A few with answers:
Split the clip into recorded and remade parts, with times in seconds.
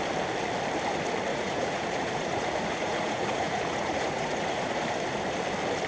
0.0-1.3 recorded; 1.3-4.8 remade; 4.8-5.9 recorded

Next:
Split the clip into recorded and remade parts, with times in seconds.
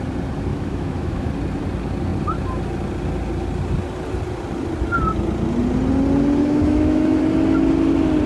0.0-0.5 recorded; 0.5-1.3 remade; 1.3-6.4 recorded; 6.4-7.2 remade; 7.2-8.3 recorded